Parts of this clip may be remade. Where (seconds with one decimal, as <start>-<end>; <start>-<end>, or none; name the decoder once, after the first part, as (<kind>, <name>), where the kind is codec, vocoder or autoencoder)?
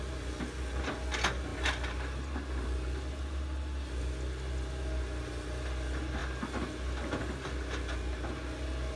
none